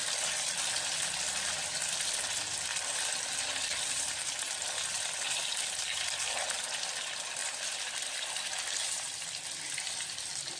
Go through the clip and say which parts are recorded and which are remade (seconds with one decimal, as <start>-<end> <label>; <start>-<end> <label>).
0.0-2.7 recorded; 2.7-3.4 remade; 3.4-4.6 recorded; 4.6-5.4 remade; 5.4-10.6 recorded